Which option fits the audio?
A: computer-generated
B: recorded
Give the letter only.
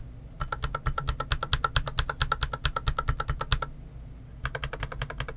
B